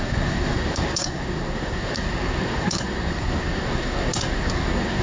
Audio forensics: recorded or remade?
remade